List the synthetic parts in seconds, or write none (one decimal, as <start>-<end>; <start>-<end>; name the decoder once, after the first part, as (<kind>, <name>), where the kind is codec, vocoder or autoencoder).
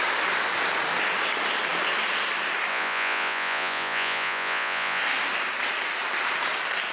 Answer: 2.7-5.0 (vocoder, Vocos)